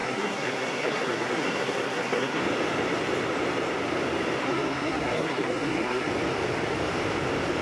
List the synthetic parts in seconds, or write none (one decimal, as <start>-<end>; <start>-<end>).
0.0-2.4; 4.4-6.1